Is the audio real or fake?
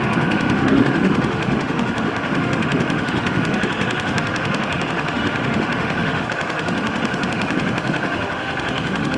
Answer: fake